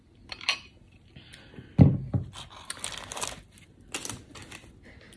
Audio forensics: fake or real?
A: real